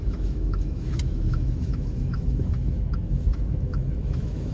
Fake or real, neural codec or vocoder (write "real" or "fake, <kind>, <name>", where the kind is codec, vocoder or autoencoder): fake, autoencoder, DAC-VAE